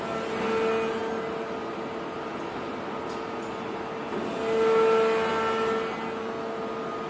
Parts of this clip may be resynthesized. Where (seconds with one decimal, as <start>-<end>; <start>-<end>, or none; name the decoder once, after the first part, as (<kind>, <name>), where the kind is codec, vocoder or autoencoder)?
none